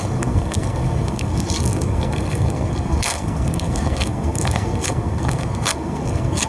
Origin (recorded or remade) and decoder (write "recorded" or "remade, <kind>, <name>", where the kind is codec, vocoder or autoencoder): remade, codec, SNAC